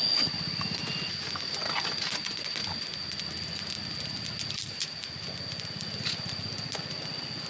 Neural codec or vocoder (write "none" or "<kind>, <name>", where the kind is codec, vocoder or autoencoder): none